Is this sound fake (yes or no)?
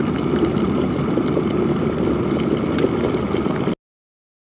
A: no